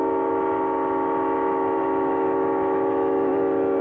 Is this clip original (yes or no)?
yes